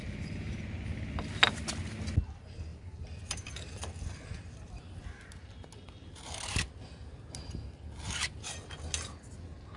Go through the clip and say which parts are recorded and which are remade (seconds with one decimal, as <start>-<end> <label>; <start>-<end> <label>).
0.0-9.8 recorded